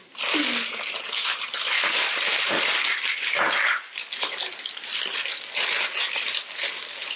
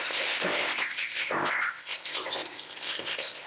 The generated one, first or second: second